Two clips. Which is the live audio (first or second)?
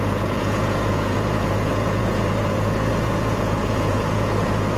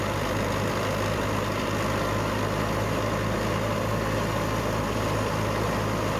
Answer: second